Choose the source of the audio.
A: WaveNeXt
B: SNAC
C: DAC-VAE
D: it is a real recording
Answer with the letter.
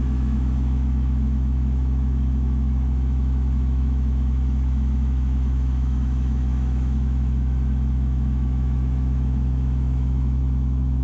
C